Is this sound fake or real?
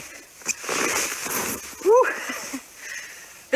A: real